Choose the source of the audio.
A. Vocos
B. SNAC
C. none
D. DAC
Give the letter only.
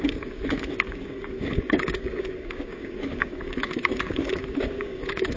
D